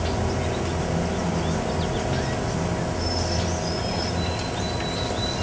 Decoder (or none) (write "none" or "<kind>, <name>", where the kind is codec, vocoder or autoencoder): none